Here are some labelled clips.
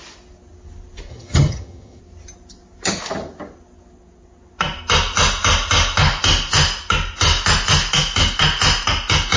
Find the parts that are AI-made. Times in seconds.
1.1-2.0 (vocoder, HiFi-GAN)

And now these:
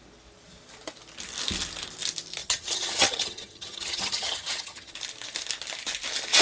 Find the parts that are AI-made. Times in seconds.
2.4-4.9 (vocoder, HiFi-GAN)

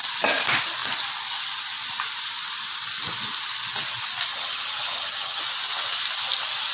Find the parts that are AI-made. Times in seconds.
4.3-5.4 (vocoder, HiFi-GAN)

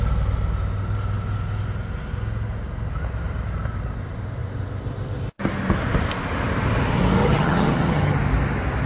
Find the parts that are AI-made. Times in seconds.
7.2-8.2 (vocoder, HiFi-GAN)

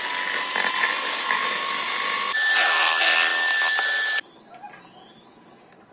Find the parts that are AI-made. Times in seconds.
none

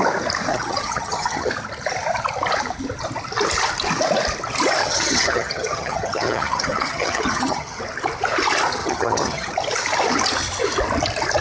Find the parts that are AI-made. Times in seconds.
0.5-1.5 (vocoder, HiFi-GAN); 4.8-7.8; 8.8-9.5